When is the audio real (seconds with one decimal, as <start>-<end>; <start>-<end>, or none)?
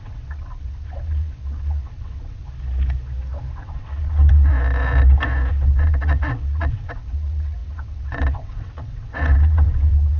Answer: 2.4-3.5; 4.5-5.5